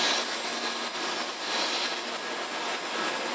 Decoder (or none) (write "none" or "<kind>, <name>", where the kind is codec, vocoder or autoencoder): none